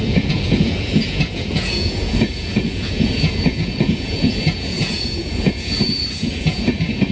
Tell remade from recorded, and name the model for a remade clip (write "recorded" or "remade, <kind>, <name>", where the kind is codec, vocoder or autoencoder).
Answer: remade, vocoder, Vocos